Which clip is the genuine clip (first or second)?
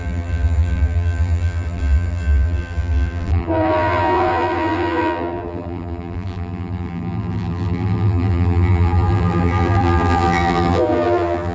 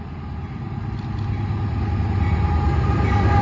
second